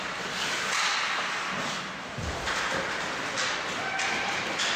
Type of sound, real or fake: real